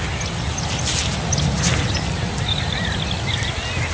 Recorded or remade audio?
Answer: recorded